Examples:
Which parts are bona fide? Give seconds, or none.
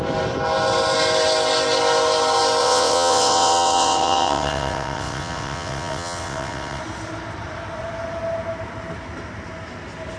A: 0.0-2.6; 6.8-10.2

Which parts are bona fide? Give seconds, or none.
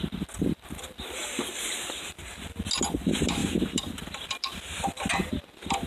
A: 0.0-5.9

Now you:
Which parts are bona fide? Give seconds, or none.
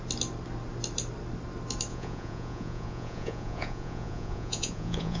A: 0.0-1.9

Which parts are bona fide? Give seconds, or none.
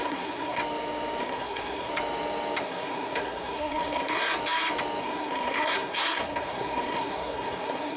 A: 0.6-1.2; 1.9-2.6; 4.3-5.0